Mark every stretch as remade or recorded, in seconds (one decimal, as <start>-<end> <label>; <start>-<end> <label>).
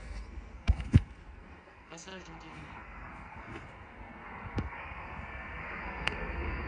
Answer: 0.0-6.7 remade